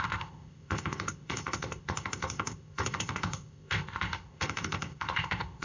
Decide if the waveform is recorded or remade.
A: remade